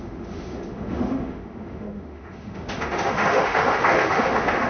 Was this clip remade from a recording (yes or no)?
yes